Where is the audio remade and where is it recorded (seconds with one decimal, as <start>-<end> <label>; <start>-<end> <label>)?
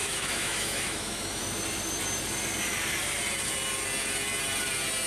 0.0-1.4 remade; 1.4-5.1 recorded